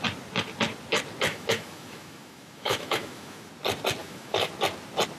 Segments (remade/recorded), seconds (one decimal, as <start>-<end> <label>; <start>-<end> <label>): 0.0-1.3 recorded; 1.3-3.5 remade; 3.5-4.0 recorded; 4.0-4.5 remade; 4.5-5.2 recorded